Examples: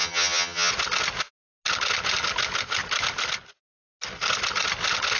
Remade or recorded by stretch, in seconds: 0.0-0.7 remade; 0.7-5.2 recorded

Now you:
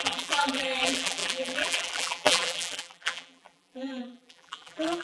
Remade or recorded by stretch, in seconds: 0.0-5.0 remade

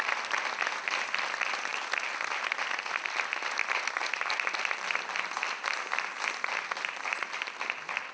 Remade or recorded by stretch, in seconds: 0.0-8.1 recorded

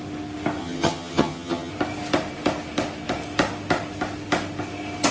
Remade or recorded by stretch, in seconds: 0.0-0.6 recorded; 0.6-1.7 remade; 1.7-5.1 recorded

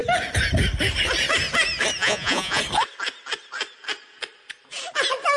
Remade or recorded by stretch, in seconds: 0.0-2.0 recorded; 2.0-2.6 remade; 2.6-5.4 recorded

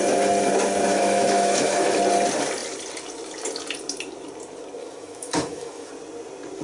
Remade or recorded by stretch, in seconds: 0.0-0.9 recorded; 0.9-2.0 remade; 2.0-4.8 recorded; 4.8-5.9 remade; 5.9-6.6 recorded